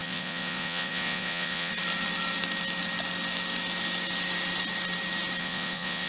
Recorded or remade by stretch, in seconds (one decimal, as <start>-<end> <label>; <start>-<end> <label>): 0.0-1.7 remade; 1.7-5.4 recorded; 5.4-6.1 remade